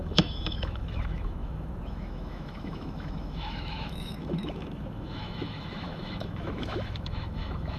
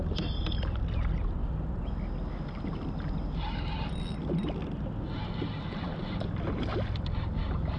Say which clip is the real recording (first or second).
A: second